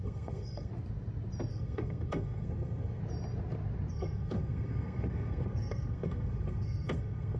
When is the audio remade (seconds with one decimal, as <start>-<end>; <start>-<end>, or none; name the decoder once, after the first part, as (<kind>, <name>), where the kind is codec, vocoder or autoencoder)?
0.0-0.7 (codec, SNAC); 1.5-3.0; 3.9-7.4